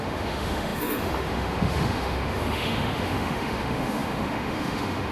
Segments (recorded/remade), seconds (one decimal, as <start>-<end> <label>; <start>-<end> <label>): 0.0-5.1 remade